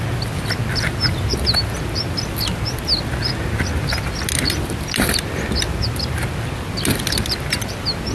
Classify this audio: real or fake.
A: real